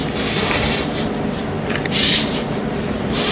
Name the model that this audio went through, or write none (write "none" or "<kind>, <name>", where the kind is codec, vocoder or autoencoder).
vocoder, BigVGAN v2